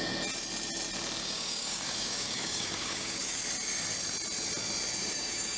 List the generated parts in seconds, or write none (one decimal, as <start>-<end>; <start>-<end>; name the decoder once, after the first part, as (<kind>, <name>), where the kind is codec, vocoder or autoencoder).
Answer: 1.2-3.4 (codec, DAC); 5.0-5.6